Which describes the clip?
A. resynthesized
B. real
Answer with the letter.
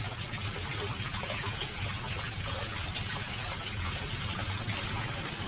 B